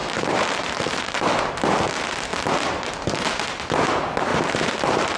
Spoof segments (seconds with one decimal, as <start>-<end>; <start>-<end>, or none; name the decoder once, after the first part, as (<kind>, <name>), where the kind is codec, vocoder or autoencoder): 0.0-1.5 (vocoder, BigVGAN v2); 2.3-3.4; 4.3-4.8